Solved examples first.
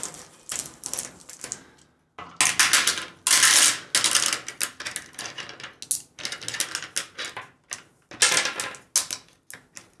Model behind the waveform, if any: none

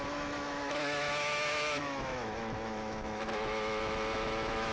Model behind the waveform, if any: autoencoder, DAC-VAE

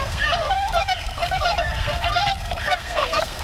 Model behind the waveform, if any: codec, SNAC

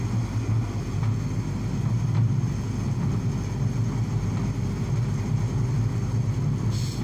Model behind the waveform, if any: none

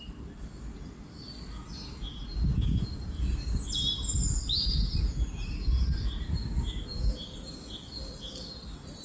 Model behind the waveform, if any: none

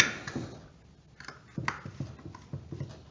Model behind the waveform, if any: none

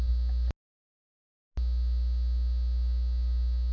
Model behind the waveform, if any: none